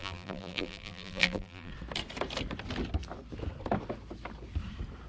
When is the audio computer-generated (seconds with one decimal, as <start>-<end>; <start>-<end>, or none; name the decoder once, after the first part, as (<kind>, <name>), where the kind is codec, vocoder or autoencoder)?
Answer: 0.0-1.7 (vocoder, BigVGAN v2)